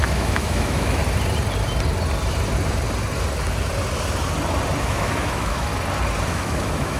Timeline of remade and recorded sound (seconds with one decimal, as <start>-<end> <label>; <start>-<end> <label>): 0.0-1.0 remade; 1.0-4.8 recorded; 4.8-5.7 remade; 5.7-6.3 recorded; 6.3-7.0 remade